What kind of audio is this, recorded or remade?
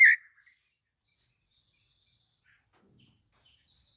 recorded